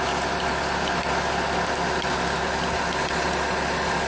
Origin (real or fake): real